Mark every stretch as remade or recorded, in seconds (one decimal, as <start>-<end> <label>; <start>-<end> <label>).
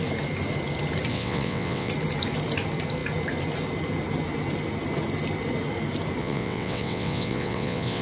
0.0-1.1 recorded; 1.1-1.9 remade; 1.9-6.2 recorded; 6.2-8.0 remade